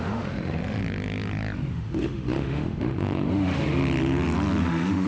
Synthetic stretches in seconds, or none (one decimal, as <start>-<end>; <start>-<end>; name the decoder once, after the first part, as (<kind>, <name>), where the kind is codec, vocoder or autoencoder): 0.0-0.8 (autoencoder, DAC-VAE); 1.7-3.8; 4.6-5.1

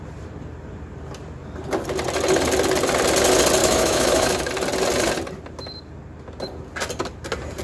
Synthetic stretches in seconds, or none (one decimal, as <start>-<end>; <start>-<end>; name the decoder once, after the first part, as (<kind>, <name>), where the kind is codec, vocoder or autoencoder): 3.6-4.5 (autoencoder, DAC-VAE)

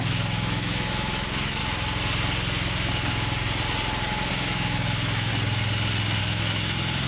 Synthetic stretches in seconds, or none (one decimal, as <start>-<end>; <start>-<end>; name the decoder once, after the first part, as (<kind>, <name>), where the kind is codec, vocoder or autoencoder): 0.0-1.6 (autoencoder, DAC-VAE); 4.3-5.3; 6.2-7.1

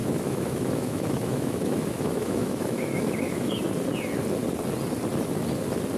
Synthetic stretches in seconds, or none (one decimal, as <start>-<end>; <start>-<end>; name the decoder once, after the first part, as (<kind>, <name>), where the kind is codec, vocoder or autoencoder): 0.0-3.6 (autoencoder, DAC-VAE)

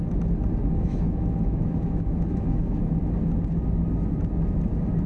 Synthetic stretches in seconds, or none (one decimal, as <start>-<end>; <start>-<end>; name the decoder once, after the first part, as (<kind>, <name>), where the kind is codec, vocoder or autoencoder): 0.7-2.8 (autoencoder, DAC-VAE)